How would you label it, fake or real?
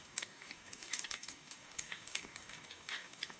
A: fake